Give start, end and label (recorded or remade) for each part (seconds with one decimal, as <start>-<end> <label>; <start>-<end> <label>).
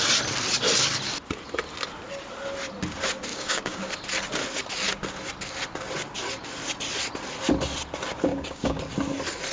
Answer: 0.0-3.3 recorded; 3.3-3.9 remade; 3.9-8.3 recorded; 8.3-8.8 remade; 8.8-9.5 recorded